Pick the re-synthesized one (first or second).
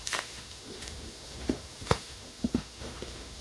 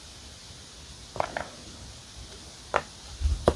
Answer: first